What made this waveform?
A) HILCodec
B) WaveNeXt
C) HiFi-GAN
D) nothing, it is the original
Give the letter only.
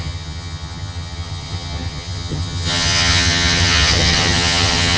C